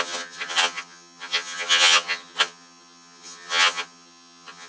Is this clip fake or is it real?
fake